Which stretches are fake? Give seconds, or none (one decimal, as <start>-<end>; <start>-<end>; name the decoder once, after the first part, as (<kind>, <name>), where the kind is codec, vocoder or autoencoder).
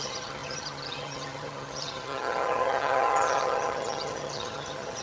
0.0-5.0 (vocoder, HiFi-GAN)